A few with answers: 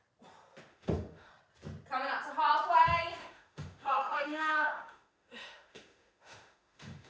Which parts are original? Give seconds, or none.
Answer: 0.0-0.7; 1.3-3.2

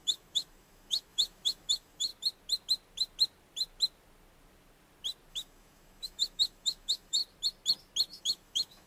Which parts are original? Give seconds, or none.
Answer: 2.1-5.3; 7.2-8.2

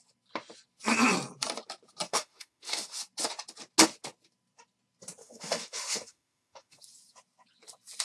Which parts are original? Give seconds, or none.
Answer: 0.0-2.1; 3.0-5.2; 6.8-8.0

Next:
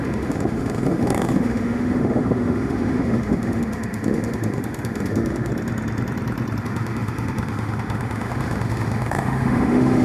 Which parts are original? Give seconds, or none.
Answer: 5.5-6.6

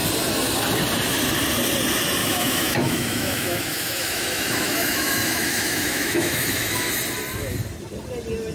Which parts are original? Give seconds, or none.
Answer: 0.0-2.2; 6.9-8.5

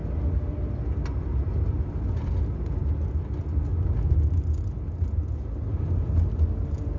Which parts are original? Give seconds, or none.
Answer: 0.0-7.0

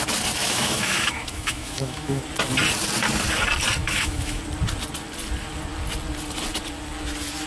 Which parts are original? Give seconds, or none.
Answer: 0.0-0.4; 2.2-3.8; 4.4-7.5

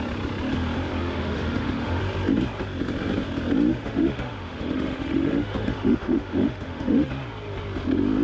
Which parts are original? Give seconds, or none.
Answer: 0.0-1.0; 2.0-3.7; 7.1-8.2